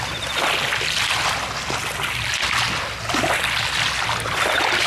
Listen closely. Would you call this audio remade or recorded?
recorded